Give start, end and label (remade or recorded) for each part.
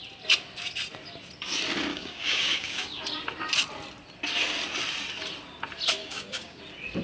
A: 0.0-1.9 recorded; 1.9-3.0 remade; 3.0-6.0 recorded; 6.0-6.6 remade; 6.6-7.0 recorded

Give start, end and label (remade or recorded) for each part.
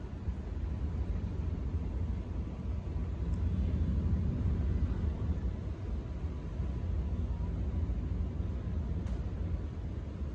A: 0.0-3.0 remade; 3.0-4.3 recorded; 4.3-5.5 remade; 5.5-8.5 recorded; 8.5-10.3 remade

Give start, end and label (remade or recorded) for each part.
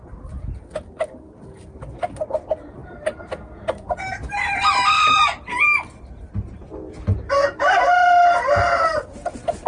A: 0.0-9.7 recorded